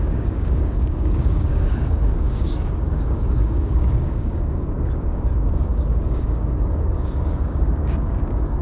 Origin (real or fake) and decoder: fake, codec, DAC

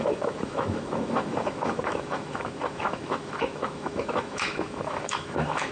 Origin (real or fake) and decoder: fake, autoencoder, DAC-VAE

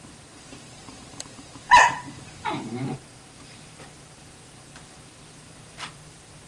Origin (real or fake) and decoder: fake, vocoder, BigVGAN v2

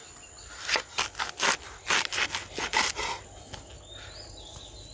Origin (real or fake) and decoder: real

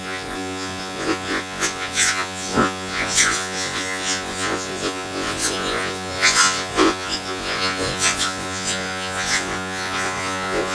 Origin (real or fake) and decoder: fake, vocoder, Vocos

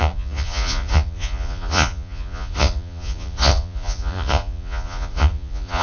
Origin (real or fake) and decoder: fake, vocoder, Vocos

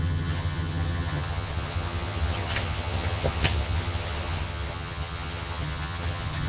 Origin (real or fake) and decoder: fake, vocoder, HiFi-GAN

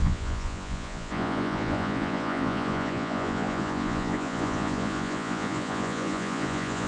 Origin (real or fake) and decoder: fake, vocoder, Vocos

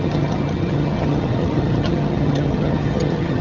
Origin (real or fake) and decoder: fake, vocoder, HiFi-GAN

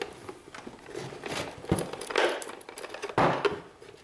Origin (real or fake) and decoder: real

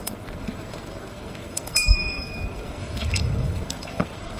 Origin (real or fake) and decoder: fake, codec, SNAC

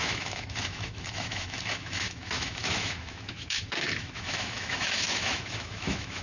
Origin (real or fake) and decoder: fake, autoencoder, DAC-VAE